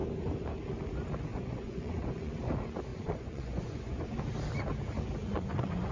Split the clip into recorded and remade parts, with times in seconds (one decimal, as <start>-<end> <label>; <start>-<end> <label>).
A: 0.0-1.3 recorded; 1.3-2.3 remade; 2.3-2.9 recorded; 2.9-4.2 remade; 4.2-5.2 recorded; 5.2-5.9 remade